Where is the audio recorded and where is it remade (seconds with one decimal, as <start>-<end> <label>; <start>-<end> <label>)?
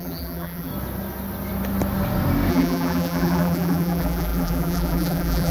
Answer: 0.0-0.7 remade; 0.7-2.5 recorded; 2.5-5.5 remade